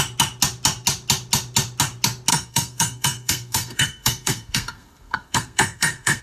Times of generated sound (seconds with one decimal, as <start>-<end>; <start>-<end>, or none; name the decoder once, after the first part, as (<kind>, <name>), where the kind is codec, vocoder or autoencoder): 2.3-6.2 (codec, SNAC)